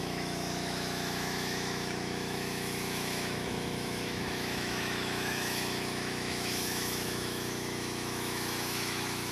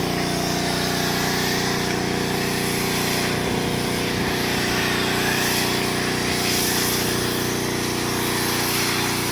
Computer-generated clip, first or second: first